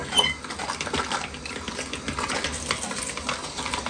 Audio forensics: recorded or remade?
recorded